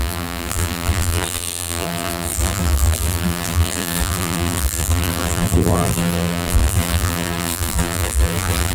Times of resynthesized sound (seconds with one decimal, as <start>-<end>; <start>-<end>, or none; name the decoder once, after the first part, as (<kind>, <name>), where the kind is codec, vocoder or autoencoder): 0.0-8.7 (vocoder, BigVGAN v2)